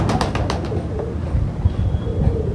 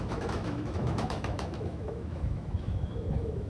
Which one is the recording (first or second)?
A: first